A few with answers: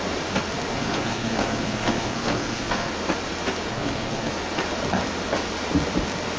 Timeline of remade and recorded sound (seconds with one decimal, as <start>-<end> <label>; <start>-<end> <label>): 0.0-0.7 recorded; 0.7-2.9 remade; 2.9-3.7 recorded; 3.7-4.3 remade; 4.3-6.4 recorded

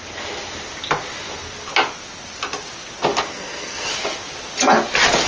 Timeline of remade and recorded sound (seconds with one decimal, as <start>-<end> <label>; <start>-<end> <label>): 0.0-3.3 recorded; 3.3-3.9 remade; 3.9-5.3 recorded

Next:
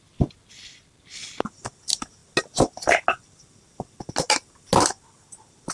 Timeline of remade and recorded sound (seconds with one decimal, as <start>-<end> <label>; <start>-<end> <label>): 0.0-5.7 recorded

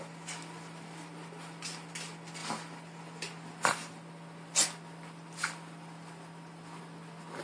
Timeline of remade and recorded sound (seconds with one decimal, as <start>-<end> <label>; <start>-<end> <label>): 0.0-7.4 recorded